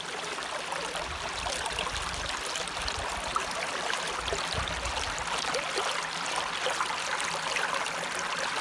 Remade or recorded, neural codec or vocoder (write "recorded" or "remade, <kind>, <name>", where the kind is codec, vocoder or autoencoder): recorded